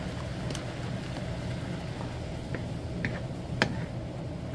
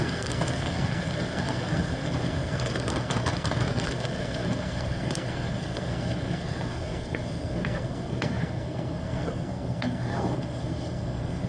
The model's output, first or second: second